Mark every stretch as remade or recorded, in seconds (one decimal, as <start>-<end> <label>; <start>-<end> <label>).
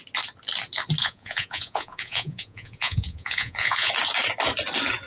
0.0-1.0 recorded; 1.0-3.9 remade; 3.9-5.1 recorded